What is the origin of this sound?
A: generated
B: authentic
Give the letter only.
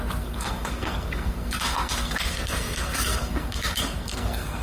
A